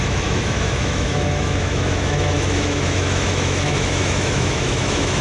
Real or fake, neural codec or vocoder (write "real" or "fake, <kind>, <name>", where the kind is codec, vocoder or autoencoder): fake, autoencoder, DAC-VAE